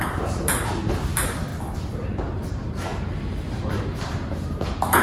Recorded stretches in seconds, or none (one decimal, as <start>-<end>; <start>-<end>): 1.5-2.5; 2.9-3.6